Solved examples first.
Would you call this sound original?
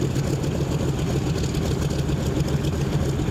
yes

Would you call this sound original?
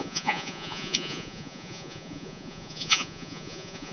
no